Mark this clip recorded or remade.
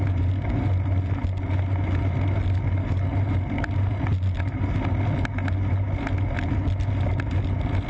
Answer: recorded